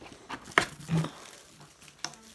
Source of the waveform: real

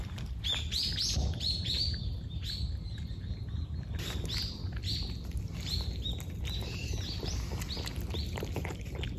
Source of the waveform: real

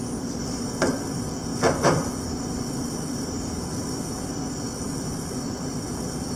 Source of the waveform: real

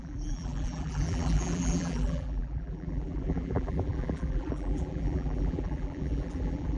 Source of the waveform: fake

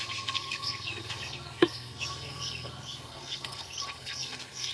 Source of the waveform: fake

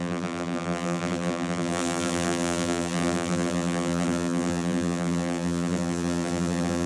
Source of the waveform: fake